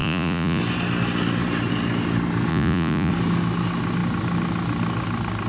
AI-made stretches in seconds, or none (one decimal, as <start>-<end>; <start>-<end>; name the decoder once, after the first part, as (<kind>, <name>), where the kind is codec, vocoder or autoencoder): 0.0-0.6 (vocoder, Vocos); 2.5-3.1